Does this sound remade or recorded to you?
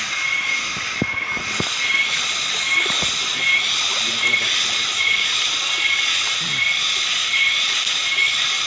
recorded